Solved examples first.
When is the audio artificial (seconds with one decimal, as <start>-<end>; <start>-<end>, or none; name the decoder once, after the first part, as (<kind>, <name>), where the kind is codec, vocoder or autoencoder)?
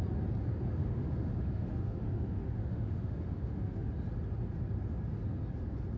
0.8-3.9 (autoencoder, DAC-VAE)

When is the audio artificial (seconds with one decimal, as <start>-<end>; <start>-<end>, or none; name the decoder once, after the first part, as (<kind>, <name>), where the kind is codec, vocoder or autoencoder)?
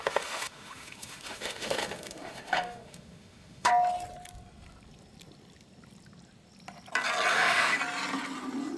0.0-3.7 (autoencoder, DAC-VAE); 7.3-7.8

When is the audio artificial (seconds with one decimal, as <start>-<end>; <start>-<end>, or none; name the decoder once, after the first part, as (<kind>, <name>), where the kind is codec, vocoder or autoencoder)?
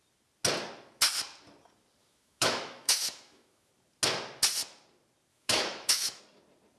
2.0-3.7 (autoencoder, DAC-VAE); 5.3-6.2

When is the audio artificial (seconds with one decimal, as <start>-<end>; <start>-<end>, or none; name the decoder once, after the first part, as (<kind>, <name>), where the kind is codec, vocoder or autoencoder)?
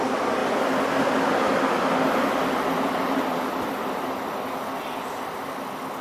none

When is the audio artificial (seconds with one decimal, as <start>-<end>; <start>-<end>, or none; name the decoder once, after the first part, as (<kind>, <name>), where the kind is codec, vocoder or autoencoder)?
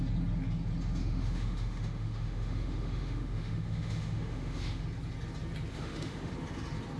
1.0-4.8 (autoencoder, DAC-VAE); 5.7-6.3